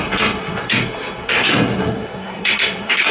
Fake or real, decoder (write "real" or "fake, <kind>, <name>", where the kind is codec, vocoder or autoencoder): fake, codec, SNAC